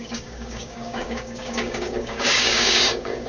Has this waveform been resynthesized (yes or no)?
yes